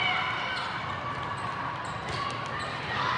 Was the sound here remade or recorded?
recorded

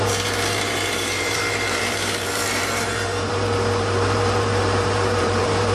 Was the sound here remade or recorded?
remade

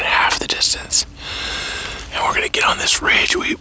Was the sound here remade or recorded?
recorded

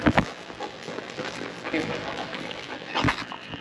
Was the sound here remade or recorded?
remade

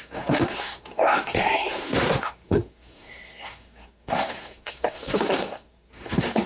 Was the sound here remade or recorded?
remade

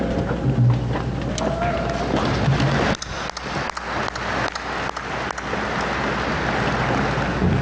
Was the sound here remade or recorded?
recorded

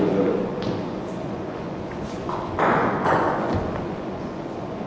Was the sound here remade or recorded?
remade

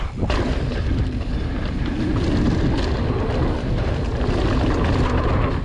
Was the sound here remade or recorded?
recorded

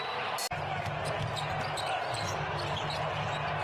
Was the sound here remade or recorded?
recorded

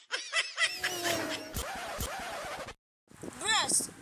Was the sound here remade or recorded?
recorded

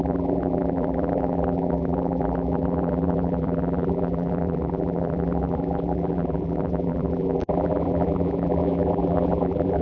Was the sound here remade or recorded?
remade